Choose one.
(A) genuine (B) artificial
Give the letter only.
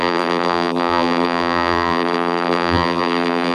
B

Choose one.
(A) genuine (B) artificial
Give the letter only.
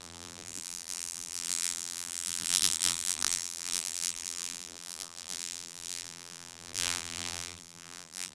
B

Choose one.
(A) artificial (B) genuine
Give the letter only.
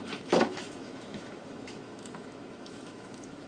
A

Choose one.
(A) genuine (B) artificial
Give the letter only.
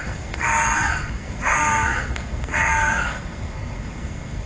B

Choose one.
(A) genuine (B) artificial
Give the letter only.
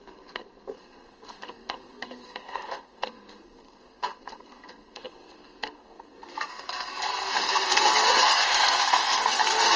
B